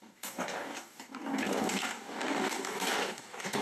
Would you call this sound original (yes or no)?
no